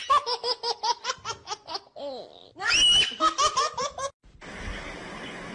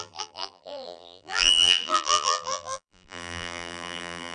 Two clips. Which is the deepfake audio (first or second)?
second